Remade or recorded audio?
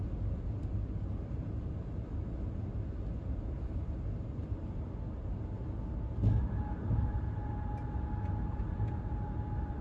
recorded